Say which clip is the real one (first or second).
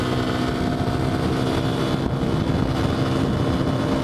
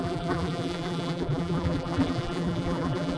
first